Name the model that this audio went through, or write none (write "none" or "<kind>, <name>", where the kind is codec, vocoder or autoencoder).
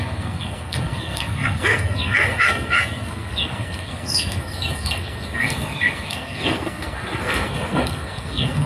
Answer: codec, SNAC